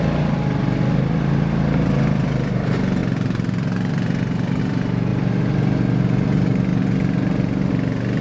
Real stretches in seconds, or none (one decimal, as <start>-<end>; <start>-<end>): 0.0-8.2